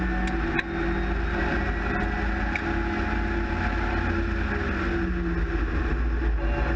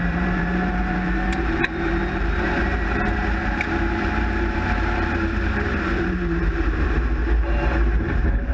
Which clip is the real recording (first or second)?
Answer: first